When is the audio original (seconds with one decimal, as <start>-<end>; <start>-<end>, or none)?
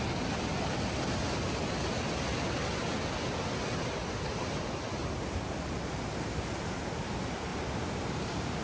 0.0-7.5; 8.2-8.6